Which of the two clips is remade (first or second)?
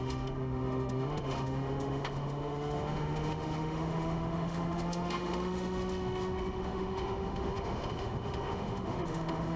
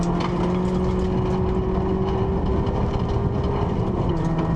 first